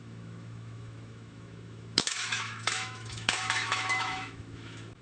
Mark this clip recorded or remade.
remade